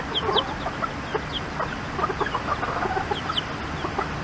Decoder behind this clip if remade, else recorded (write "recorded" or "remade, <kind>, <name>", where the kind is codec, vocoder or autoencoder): recorded